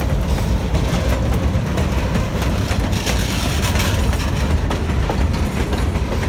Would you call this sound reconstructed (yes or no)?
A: yes